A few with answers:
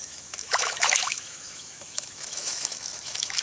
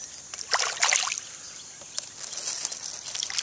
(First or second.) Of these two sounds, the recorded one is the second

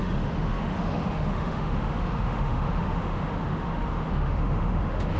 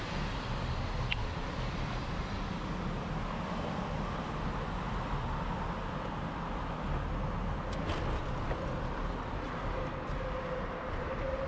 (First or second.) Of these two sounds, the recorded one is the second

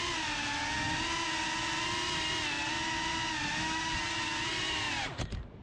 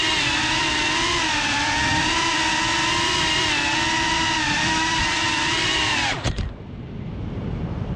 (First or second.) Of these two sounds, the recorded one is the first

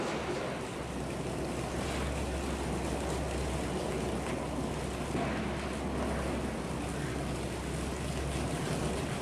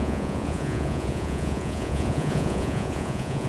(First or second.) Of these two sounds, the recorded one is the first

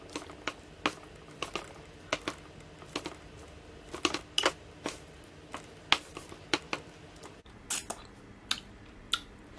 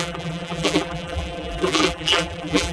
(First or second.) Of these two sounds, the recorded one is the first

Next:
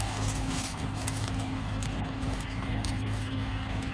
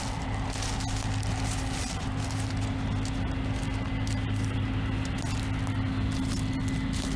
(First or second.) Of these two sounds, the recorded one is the second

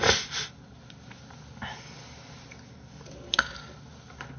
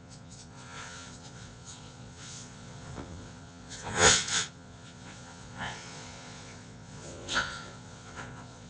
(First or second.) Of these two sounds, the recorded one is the first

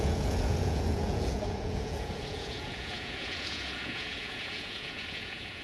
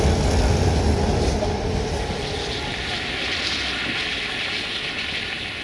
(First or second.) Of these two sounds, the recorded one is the second